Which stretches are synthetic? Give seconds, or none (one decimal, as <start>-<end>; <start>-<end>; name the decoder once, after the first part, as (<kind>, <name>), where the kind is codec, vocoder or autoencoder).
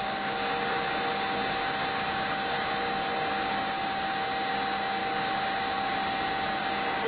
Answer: none